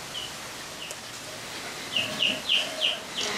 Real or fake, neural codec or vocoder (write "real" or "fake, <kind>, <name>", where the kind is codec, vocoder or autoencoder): real